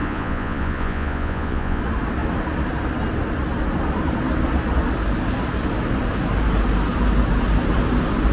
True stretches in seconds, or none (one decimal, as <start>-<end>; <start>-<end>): 1.8-8.3